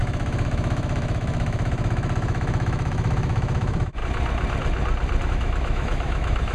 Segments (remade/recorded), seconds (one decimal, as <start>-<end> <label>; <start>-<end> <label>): 0.0-4.0 remade; 4.0-5.3 recorded; 5.3-6.5 remade